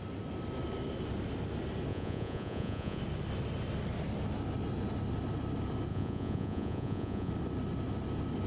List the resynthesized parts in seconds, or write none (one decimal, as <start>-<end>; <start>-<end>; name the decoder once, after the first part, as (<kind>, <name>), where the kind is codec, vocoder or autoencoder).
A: 1.9-3.0 (vocoder, Vocos); 5.9-7.3